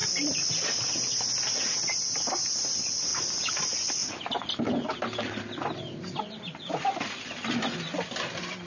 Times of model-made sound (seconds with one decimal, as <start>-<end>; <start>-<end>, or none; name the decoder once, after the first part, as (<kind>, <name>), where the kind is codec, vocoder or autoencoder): 0.0-3.1 (vocoder, BigVGAN v2); 3.6-4.0